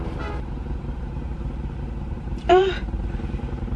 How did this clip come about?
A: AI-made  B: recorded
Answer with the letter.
A